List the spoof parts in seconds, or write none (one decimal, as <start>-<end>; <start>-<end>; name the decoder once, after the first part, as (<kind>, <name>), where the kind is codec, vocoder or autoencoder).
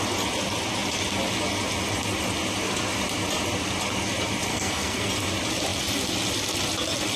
4.5-5.1 (codec, SNAC)